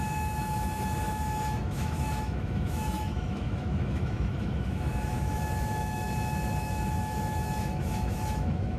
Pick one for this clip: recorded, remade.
remade